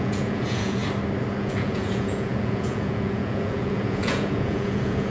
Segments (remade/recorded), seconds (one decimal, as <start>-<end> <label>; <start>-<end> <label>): 0.0-0.8 remade; 0.8-1.4 recorded; 1.4-5.1 remade